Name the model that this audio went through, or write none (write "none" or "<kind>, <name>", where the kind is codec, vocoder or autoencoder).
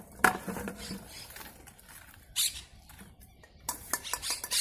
none